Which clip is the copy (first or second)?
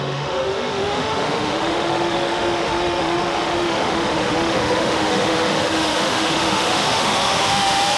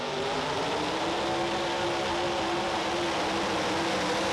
first